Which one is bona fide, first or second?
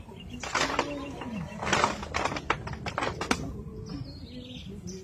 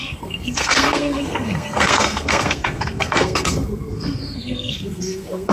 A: first